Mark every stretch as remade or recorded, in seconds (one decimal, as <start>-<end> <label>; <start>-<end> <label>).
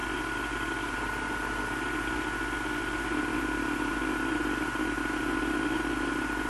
0.0-6.5 recorded